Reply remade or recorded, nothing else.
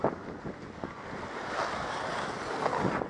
recorded